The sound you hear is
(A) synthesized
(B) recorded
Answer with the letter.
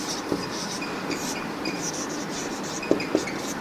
A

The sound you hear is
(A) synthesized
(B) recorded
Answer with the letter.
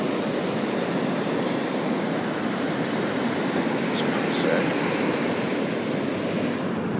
B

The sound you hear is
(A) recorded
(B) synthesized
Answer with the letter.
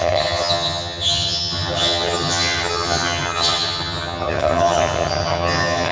B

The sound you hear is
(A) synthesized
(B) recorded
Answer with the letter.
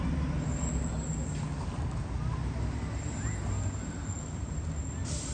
B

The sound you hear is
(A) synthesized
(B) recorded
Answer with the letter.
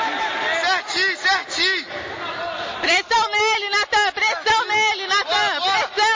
B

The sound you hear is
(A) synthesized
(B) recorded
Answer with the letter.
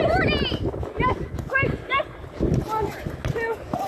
B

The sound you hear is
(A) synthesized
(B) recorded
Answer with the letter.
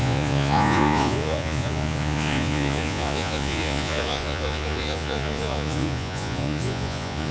A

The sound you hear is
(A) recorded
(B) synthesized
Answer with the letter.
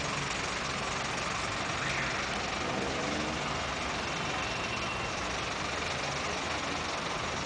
A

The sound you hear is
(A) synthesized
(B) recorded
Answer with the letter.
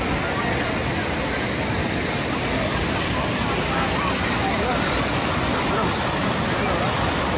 B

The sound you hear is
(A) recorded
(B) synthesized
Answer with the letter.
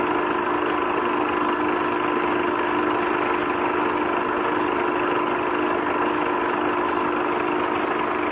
A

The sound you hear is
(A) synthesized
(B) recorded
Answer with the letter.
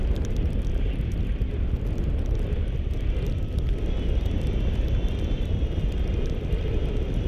B